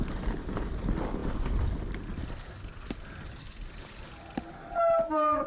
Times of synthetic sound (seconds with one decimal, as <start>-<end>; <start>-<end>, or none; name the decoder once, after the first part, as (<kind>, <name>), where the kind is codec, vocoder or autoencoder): none